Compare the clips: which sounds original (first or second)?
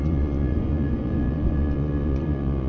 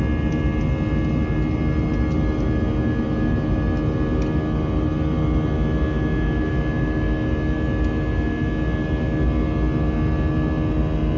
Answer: second